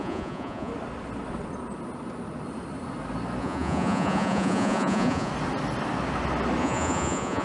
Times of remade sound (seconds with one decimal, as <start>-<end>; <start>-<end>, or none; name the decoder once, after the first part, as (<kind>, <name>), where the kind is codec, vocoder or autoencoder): 0.0-0.7 (vocoder, Vocos); 3.4-5.3; 6.6-7.4